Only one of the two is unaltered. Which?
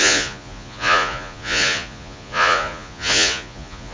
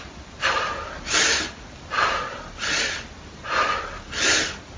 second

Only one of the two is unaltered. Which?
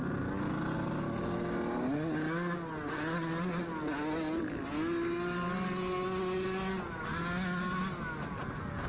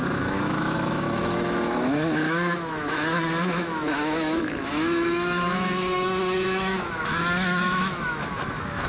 first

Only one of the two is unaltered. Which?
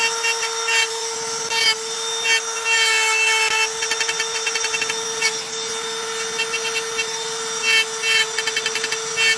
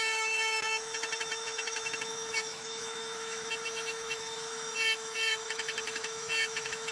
first